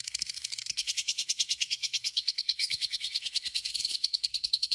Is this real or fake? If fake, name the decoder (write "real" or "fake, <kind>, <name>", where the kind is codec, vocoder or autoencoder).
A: fake, codec, SNAC